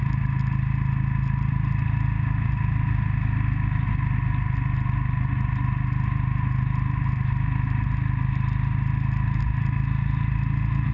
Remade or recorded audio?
recorded